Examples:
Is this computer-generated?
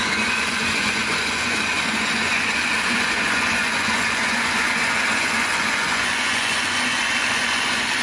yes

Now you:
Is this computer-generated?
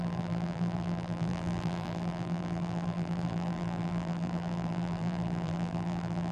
yes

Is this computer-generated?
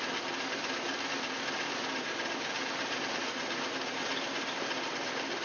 no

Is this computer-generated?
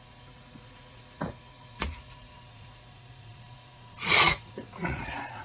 yes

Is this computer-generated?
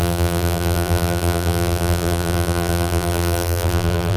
yes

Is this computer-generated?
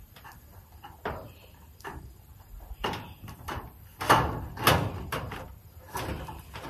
no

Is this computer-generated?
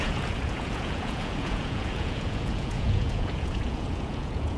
yes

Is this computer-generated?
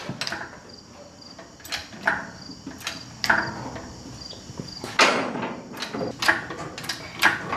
no